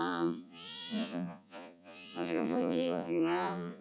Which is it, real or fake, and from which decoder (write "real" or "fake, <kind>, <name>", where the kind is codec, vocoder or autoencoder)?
fake, vocoder, Vocos